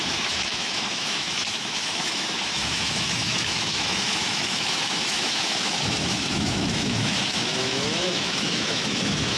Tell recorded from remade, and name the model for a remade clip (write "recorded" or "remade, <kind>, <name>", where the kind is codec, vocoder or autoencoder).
remade, autoencoder, DAC-VAE